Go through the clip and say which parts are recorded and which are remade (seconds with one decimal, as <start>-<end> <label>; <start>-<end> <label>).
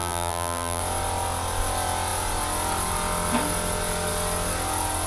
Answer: 0.0-0.8 remade; 0.8-5.1 recorded